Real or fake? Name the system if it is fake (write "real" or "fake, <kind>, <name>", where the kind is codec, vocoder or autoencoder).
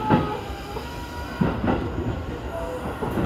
real